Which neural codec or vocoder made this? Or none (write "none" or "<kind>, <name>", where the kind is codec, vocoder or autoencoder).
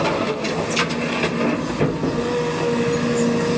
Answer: none